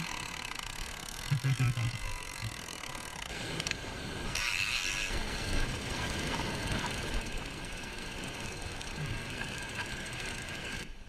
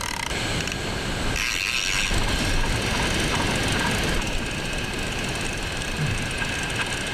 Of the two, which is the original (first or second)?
second